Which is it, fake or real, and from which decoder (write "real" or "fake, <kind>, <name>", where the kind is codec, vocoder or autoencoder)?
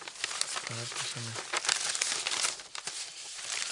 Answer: real